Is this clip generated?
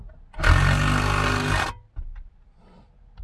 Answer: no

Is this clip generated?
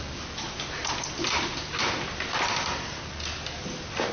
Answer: no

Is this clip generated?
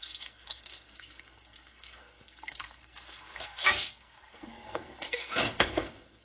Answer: yes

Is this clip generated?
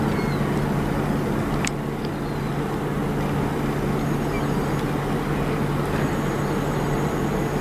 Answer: no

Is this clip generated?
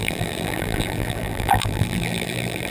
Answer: yes